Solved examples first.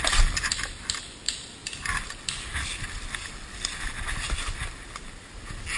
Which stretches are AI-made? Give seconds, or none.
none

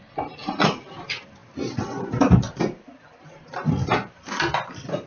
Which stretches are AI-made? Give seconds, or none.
0.0-5.1 (vocoder, BigVGAN v2)

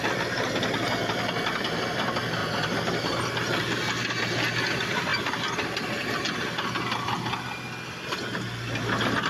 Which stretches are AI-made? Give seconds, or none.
2.4-3.2 (vocoder, BigVGAN v2)

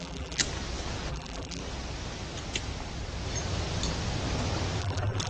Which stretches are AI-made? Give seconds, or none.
0.0-0.4 (vocoder, BigVGAN v2); 1.1-1.6; 4.8-5.3